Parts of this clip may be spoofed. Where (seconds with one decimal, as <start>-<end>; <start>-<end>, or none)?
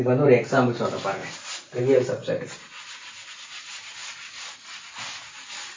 4.0-4.5